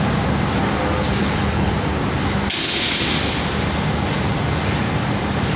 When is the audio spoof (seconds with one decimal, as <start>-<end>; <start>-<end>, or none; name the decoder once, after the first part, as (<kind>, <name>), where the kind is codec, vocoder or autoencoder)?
1.2-1.7 (codec, HILCodec)